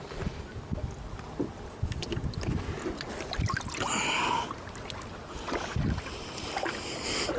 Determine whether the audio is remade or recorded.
recorded